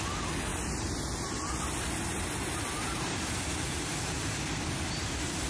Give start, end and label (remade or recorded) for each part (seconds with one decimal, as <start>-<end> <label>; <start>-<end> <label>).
0.0-5.5 recorded